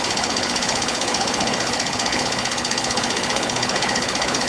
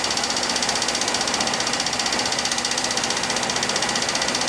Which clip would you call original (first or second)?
second